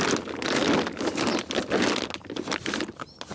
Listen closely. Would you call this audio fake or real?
real